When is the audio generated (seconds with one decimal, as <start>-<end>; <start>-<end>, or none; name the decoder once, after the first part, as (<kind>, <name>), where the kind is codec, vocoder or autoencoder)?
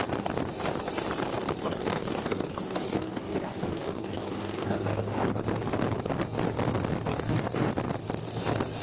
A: 1.6-5.4 (codec, DAC); 7.1-7.7